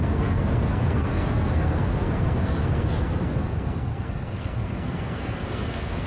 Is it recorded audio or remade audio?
remade